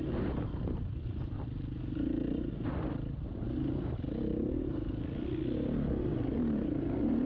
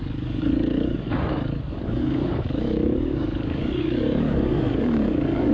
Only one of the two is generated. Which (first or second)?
second